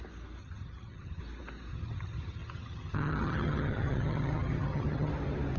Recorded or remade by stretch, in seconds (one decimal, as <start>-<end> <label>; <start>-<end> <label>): 0.0-0.4 recorded; 0.4-1.2 remade; 1.2-1.7 recorded; 1.7-5.1 remade; 5.1-5.6 recorded